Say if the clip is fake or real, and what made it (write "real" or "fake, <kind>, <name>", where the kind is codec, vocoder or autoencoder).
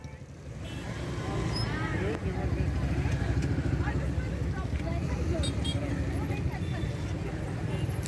real